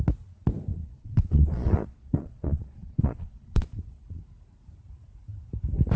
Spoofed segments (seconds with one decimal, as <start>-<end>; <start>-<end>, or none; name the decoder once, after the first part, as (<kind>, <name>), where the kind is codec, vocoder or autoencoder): 0.7-4.2 (vocoder, Vocos)